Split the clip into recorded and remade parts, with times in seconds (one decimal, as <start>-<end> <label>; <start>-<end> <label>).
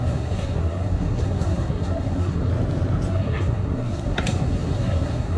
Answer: 0.0-2.5 remade; 2.5-3.1 recorded; 3.1-5.4 remade